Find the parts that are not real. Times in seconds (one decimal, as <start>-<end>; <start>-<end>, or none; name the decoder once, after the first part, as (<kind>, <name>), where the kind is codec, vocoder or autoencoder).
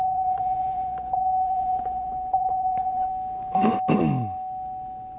0.0-3.1 (vocoder, Vocos)